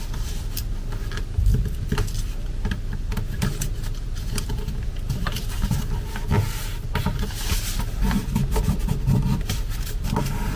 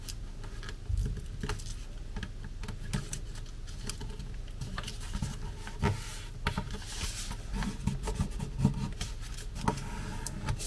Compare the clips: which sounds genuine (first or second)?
second